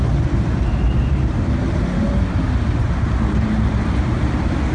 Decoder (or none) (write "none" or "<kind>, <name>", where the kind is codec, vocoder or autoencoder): none